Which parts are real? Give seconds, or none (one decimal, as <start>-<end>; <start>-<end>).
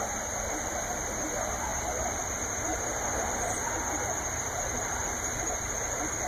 0.0-6.3